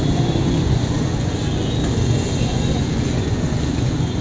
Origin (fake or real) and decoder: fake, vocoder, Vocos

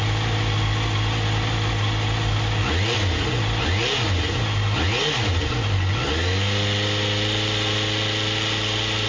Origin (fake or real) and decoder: real